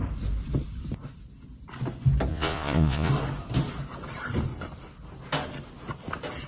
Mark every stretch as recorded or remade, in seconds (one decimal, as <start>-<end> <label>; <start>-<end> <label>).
0.0-2.3 recorded; 2.3-3.1 remade; 3.1-6.5 recorded